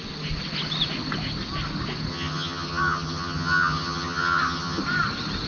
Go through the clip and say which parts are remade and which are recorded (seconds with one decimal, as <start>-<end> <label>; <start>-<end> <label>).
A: 0.0-2.1 recorded; 2.1-4.8 remade; 4.8-5.5 recorded